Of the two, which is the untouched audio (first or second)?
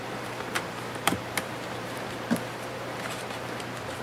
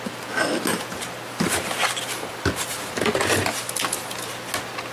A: second